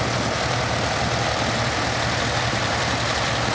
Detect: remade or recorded recorded